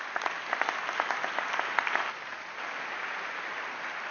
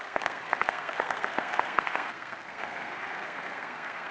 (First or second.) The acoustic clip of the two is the first